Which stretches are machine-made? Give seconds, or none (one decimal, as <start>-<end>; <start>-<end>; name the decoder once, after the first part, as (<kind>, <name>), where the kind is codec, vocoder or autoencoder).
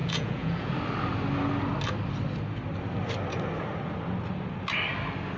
0.0-0.7 (vocoder, Vocos)